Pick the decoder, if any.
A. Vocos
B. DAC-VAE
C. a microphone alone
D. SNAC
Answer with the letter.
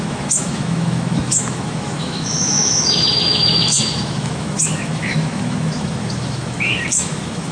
B